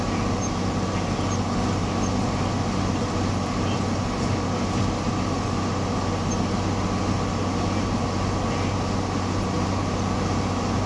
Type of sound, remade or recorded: recorded